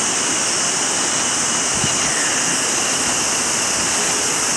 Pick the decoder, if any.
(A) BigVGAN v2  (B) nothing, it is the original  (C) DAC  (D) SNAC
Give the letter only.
B